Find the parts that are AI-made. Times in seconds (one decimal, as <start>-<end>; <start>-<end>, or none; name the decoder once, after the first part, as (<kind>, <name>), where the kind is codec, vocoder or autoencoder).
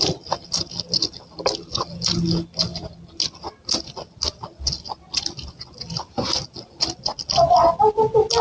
none